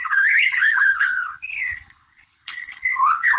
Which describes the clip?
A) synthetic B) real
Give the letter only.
A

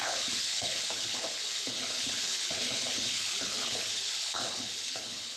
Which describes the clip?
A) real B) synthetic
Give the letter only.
B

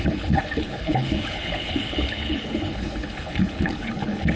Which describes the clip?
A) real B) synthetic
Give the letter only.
B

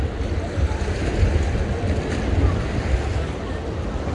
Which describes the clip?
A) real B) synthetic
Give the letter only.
A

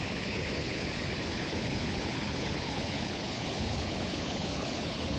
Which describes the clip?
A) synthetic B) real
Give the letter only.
A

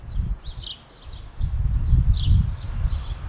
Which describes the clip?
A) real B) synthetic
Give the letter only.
A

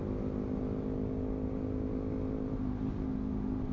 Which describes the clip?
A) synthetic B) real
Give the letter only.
B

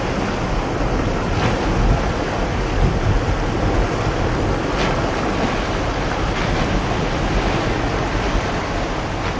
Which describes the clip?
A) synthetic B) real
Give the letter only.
B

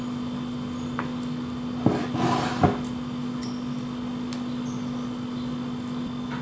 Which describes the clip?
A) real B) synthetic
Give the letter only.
A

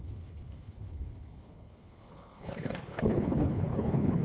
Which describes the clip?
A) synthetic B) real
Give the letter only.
A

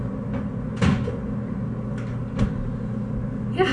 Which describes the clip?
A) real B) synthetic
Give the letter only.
A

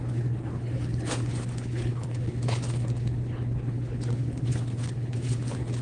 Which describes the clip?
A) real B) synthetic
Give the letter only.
B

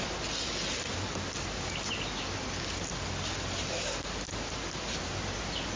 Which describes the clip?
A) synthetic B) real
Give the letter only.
B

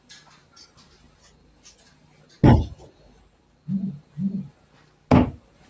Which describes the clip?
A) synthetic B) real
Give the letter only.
B